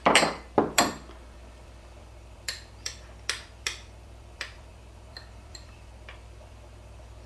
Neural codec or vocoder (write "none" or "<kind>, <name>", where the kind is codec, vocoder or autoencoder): vocoder, BigVGAN v2